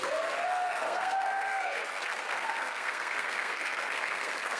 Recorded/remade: remade